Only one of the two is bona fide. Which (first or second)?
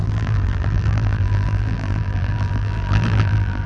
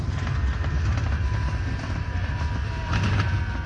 second